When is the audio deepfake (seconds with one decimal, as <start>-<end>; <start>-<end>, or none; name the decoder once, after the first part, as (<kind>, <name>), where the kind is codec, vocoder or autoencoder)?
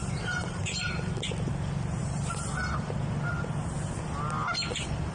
0.0-0.9 (vocoder, BigVGAN v2); 2.0-3.0